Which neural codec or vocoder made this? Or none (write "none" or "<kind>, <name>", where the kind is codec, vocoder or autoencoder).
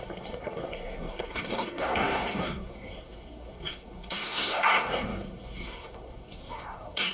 codec, SNAC